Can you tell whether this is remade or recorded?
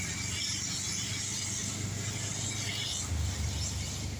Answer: recorded